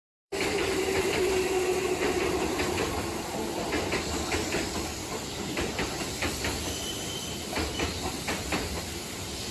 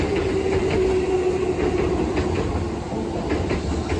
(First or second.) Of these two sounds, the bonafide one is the second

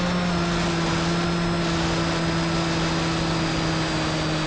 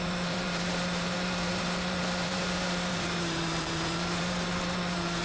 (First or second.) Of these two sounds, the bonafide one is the first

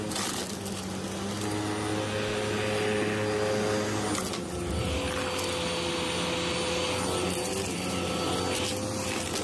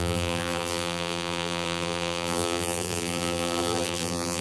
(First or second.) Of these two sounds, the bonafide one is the first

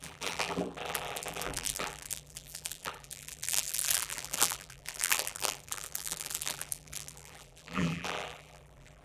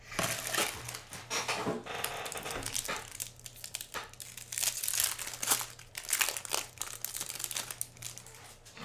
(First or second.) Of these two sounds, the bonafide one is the second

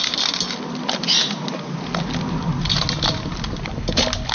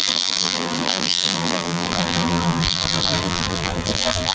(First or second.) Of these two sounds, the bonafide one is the first